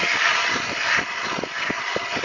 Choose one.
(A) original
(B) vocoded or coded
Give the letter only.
A